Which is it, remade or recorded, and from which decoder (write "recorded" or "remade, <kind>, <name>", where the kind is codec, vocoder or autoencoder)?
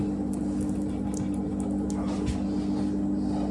recorded